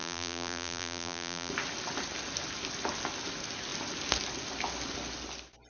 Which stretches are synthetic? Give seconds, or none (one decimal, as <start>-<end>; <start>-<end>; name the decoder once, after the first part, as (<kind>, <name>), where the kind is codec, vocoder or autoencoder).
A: 0.0-1.5 (vocoder, BigVGAN v2)